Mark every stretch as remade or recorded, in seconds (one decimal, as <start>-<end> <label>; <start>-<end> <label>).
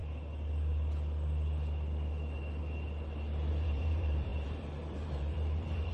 0.0-3.5 recorded; 3.5-5.9 remade